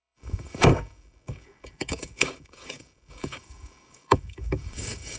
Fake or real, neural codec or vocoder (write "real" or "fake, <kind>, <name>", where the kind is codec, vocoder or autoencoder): fake, codec, DAC